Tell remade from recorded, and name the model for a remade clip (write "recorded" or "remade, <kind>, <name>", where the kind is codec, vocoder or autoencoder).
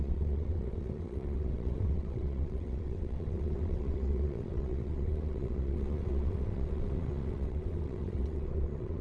remade, vocoder, WaveNeXt